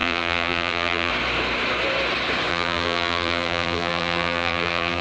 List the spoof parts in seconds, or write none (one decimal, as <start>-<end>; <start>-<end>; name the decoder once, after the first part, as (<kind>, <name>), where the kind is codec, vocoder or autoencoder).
0.0-1.1 (vocoder, BigVGAN v2); 2.5-5.0